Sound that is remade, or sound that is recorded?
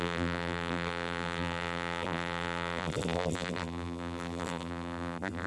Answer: remade